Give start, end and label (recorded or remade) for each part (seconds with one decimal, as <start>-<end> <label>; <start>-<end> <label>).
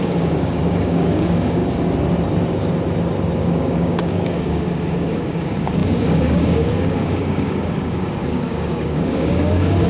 0.0-1.6 remade; 1.6-3.4 recorded; 3.4-9.9 remade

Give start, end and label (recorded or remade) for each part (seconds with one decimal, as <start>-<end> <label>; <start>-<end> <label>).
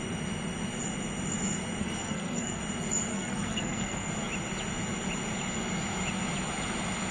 0.0-1.8 recorded; 1.8-2.6 remade; 2.6-3.1 recorded; 3.1-4.1 remade; 4.1-7.1 recorded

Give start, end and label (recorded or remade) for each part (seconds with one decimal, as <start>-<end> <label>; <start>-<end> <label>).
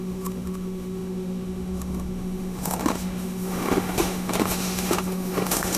0.0-5.8 remade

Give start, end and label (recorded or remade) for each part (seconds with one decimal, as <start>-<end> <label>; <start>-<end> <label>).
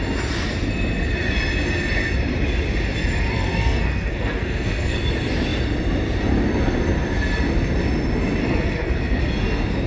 0.0-3.3 recorded; 3.3-5.0 remade; 5.0-8.4 recorded; 8.4-9.2 remade; 9.2-9.9 recorded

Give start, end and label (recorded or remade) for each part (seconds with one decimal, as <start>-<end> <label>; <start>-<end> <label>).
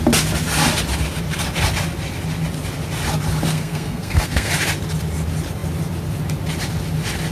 0.0-3.5 recorded; 3.5-4.5 remade; 4.5-7.3 recorded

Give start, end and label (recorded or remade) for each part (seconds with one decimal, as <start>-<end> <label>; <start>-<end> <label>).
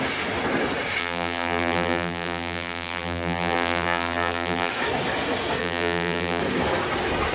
0.0-1.0 recorded; 1.0-4.7 remade; 4.7-5.6 recorded; 5.6-6.4 remade; 6.4-7.3 recorded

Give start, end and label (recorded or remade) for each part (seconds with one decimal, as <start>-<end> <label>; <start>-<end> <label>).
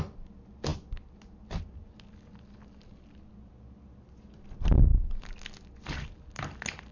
0.0-6.9 recorded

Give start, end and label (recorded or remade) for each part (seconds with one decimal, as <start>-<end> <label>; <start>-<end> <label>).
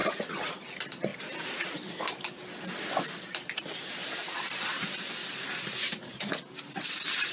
0.0-7.3 recorded